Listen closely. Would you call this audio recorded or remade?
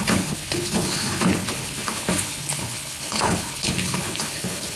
remade